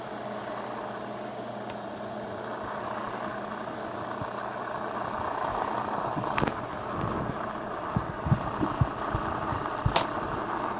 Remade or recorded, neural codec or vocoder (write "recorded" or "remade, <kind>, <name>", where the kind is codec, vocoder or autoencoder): recorded